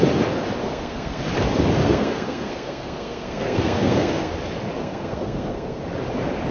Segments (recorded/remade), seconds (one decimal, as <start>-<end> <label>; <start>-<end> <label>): 0.0-0.6 recorded; 0.6-1.2 remade; 1.2-1.8 recorded; 1.8-4.3 remade; 4.3-4.8 recorded; 4.8-5.8 remade; 5.8-6.5 recorded